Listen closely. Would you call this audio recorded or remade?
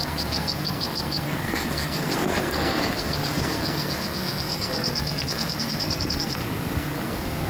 remade